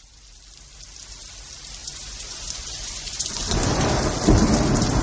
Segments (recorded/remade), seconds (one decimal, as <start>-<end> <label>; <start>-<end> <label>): 0.0-1.8 recorded; 1.8-3.8 remade; 3.8-5.0 recorded

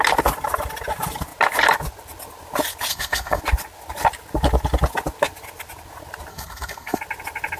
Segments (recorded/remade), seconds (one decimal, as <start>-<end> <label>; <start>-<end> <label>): 0.0-2.9 recorded; 2.9-3.4 remade; 3.4-6.3 recorded; 6.3-7.0 remade; 7.0-7.6 recorded

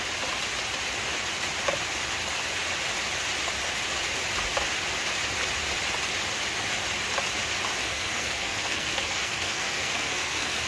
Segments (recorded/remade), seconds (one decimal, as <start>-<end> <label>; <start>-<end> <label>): 0.0-7.8 recorded; 7.8-10.7 remade

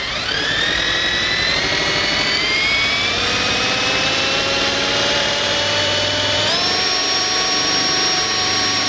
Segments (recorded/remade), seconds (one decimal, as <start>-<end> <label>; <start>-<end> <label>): 0.0-8.9 remade

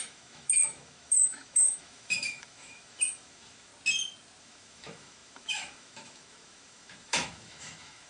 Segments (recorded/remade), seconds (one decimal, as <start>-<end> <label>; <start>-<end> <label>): 0.0-3.7 remade; 3.7-4.4 recorded; 4.4-8.1 remade

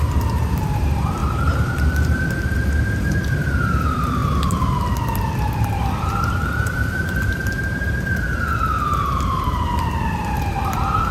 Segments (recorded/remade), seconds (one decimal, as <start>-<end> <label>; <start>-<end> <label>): 0.0-4.2 remade; 4.2-5.5 recorded; 5.5-8.5 remade; 8.5-10.4 recorded; 10.4-11.1 remade

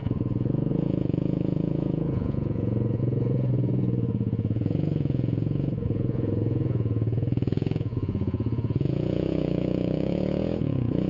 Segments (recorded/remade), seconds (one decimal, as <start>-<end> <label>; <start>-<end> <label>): 0.0-11.1 remade